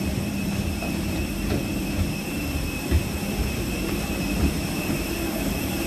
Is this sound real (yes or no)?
no